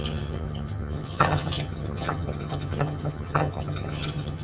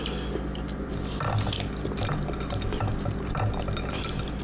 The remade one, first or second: first